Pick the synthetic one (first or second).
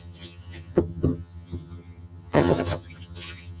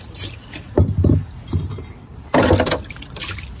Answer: first